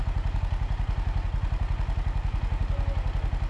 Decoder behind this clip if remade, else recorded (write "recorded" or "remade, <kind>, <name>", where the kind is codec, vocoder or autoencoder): recorded